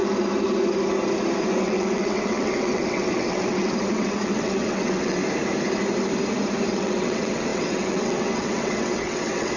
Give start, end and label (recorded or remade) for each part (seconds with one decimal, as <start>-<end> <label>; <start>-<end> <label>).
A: 0.0-1.4 recorded; 1.4-5.2 remade; 5.2-6.7 recorded; 6.7-9.6 remade